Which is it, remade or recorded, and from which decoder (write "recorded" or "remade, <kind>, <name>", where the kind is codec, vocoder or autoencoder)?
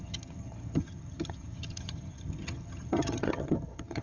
remade, vocoder, HiFi-GAN